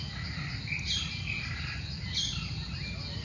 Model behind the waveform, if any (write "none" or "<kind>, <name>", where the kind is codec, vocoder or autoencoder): none